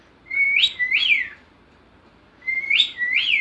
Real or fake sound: fake